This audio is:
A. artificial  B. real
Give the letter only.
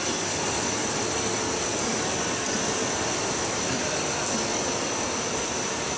B